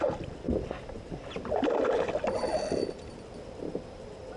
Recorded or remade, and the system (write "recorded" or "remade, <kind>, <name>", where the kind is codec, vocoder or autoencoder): recorded